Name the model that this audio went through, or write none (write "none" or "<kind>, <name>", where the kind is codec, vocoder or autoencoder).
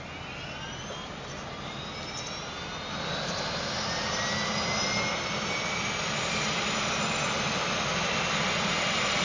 none